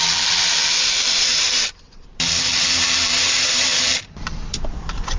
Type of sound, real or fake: fake